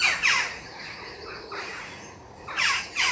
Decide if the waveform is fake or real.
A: fake